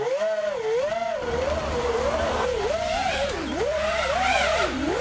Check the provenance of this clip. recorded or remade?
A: remade